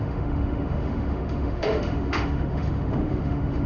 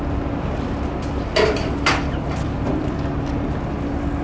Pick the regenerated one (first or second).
first